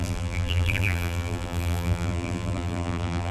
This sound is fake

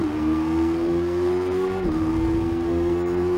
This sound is fake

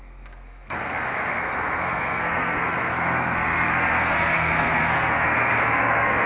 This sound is fake